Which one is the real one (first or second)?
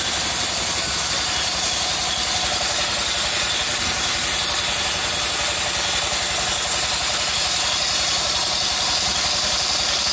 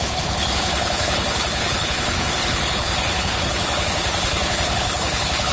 first